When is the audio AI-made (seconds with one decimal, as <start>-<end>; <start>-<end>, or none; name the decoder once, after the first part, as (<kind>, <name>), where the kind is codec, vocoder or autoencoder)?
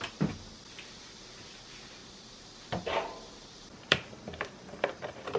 2.0-5.4 (vocoder, BigVGAN v2)